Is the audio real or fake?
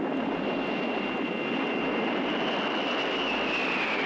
real